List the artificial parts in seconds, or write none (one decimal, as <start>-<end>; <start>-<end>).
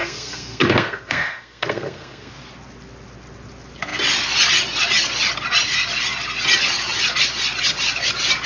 0.0-2.3